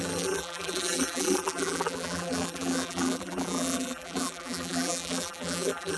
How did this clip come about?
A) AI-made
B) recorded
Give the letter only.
A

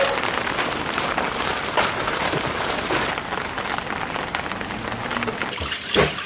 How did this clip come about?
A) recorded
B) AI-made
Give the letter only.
A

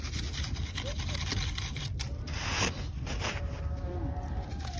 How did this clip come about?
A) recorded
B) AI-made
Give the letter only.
A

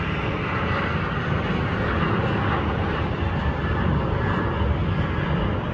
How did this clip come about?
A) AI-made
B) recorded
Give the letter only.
B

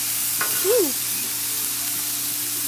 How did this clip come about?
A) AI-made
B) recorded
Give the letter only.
B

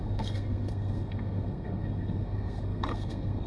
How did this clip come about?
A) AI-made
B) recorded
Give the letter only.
A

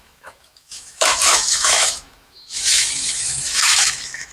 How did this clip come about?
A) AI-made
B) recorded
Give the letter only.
A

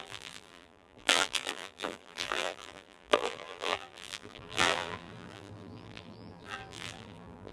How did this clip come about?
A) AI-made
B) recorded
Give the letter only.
A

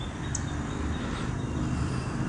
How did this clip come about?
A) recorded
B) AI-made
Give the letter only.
B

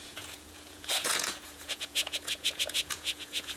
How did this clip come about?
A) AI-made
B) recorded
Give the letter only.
A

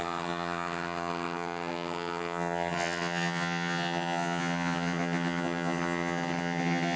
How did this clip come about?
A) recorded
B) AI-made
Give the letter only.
B